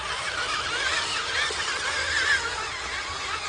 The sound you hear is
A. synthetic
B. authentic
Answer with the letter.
B